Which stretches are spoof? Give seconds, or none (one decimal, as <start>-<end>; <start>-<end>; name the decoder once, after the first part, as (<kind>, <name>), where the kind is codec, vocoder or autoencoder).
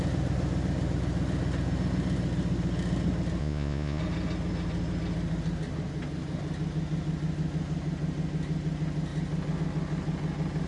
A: 3.4-4.0 (vocoder, Vocos)